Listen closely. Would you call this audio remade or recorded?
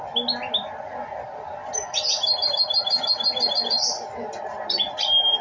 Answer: recorded